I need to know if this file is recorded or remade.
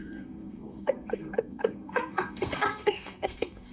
remade